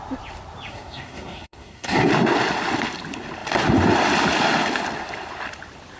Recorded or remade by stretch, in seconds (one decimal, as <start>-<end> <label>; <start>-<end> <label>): 0.0-0.7 recorded; 0.7-2.1 remade; 2.1-6.0 recorded